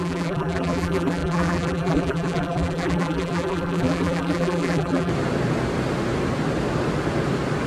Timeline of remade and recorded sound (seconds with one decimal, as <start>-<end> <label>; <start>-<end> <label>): 0.0-5.1 remade; 5.1-7.7 recorded